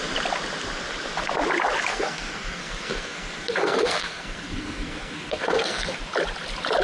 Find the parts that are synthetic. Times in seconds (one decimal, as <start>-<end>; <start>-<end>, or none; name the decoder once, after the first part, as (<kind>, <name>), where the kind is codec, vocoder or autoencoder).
1.9-6.0 (codec, SNAC)